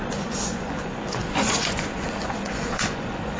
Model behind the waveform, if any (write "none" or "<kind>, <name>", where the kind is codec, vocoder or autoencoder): vocoder, Vocos